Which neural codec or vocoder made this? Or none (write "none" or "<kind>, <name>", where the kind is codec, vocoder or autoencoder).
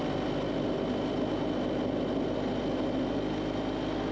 none